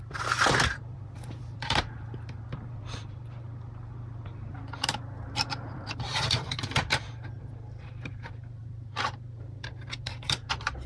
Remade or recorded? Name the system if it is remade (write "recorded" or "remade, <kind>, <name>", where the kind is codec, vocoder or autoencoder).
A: remade, vocoder, BigVGAN v2